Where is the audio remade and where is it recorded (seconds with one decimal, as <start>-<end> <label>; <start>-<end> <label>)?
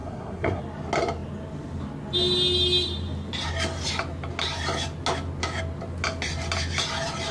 0.0-0.6 remade; 0.6-7.3 recorded